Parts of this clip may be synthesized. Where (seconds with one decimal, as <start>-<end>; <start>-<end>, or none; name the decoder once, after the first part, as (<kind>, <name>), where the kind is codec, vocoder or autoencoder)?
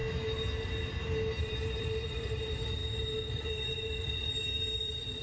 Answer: 1.4-2.8 (vocoder, BigVGAN v2); 3.3-5.2